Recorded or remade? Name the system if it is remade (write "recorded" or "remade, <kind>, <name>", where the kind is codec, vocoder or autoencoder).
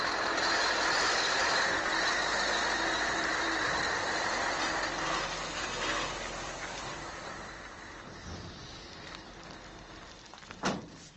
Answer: recorded